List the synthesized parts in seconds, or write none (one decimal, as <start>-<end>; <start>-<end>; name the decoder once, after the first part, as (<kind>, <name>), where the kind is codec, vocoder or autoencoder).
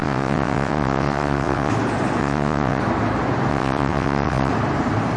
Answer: 0.0-1.7 (vocoder, WaveNeXt); 2.2-2.8; 3.5-4.5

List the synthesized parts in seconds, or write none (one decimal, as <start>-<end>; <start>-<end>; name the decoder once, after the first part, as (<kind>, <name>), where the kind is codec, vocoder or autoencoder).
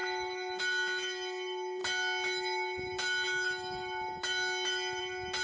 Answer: none